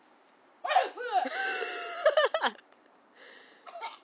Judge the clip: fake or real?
fake